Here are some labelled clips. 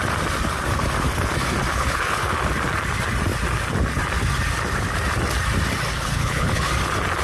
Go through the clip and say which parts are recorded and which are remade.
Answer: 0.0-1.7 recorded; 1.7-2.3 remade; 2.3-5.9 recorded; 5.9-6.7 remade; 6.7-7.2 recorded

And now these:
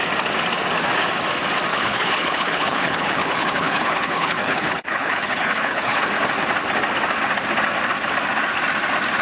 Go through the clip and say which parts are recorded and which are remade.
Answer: 0.0-1.7 recorded; 1.7-6.0 remade; 6.0-9.2 recorded

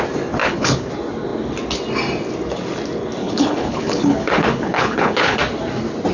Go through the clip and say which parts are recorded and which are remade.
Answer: 0.0-0.4 recorded; 0.4-0.9 remade; 0.9-3.2 recorded; 3.2-5.4 remade; 5.4-6.1 recorded

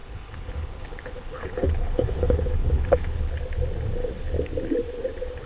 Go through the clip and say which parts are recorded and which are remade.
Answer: 0.0-3.3 remade; 3.3-5.5 recorded

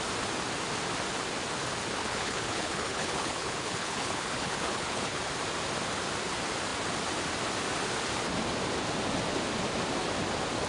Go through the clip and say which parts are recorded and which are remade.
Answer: 0.0-2.0 recorded; 2.0-5.2 remade; 5.2-10.7 recorded

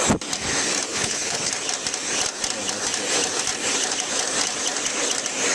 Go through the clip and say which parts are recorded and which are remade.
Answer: 0.0-0.9 recorded; 0.9-1.5 remade; 1.5-5.5 recorded

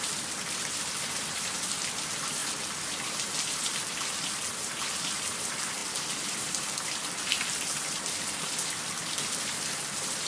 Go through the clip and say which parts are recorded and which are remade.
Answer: 0.0-10.3 recorded